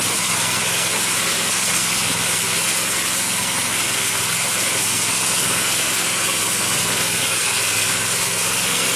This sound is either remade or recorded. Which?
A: remade